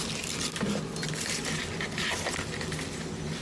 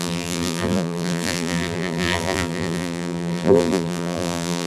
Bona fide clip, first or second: first